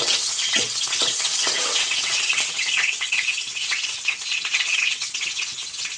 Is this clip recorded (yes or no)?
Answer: no